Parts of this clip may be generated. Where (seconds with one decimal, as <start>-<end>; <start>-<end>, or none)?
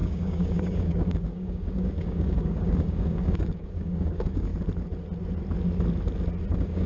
0.0-4.5; 6.5-6.9